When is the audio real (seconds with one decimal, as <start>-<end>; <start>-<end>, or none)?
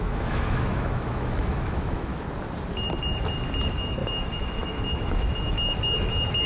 2.1-3.6